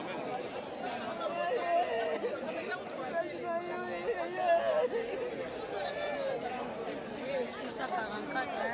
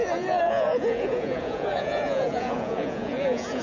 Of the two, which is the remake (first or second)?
second